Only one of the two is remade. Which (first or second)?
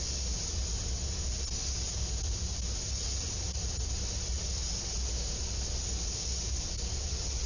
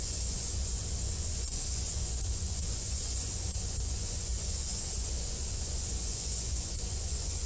second